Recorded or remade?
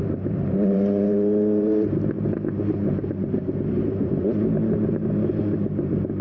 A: remade